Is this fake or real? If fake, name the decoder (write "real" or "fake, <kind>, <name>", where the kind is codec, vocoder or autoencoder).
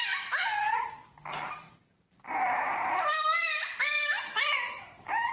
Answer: real